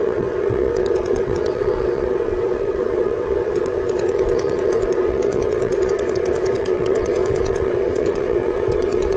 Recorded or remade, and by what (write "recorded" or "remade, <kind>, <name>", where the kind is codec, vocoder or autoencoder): remade, vocoder, WaveNeXt